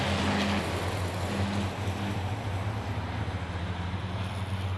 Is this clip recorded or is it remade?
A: recorded